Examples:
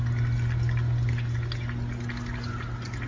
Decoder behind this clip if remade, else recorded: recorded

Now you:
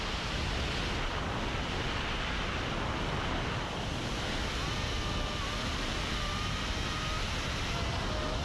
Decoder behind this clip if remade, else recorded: recorded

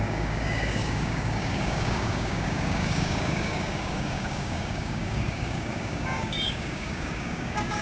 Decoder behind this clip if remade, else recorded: remade, codec, DAC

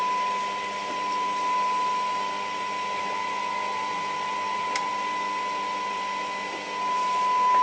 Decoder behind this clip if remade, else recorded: recorded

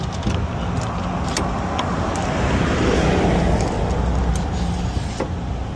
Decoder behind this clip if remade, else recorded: recorded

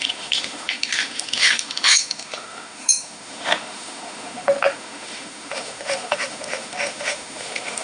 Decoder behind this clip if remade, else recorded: remade, autoencoder, DAC-VAE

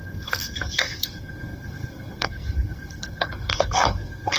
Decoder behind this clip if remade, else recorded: remade, codec, SNAC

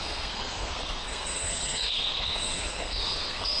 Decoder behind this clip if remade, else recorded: remade, codec, SNAC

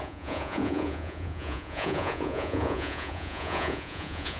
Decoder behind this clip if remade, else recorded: remade, vocoder, Vocos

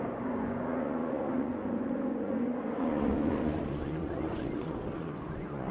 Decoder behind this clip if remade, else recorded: remade, vocoder, Vocos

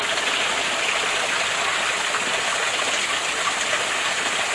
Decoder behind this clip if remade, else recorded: recorded